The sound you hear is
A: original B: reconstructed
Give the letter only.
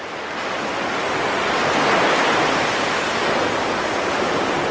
A